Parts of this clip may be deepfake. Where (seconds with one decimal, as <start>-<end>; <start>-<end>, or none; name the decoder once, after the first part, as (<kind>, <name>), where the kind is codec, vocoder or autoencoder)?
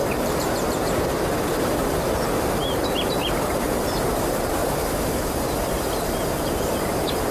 0.0-3.8 (vocoder, BigVGAN v2); 4.6-5.3